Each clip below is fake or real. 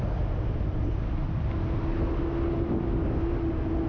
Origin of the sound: real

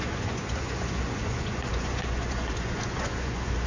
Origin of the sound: fake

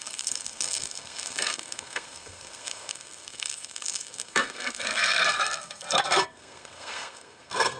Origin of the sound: fake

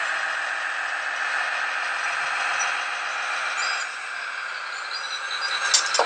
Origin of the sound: real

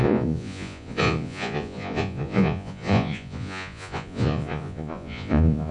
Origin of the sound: fake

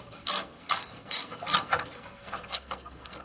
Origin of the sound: fake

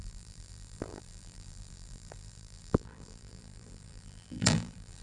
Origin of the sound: fake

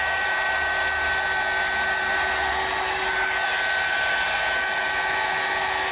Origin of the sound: real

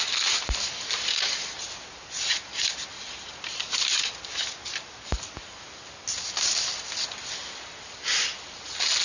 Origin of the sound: real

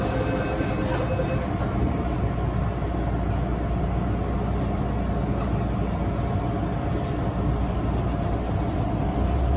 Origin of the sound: real